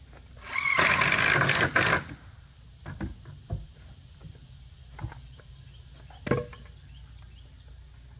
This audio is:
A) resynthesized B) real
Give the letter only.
B